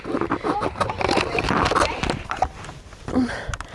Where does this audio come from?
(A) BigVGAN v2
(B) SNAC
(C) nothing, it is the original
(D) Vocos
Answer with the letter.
C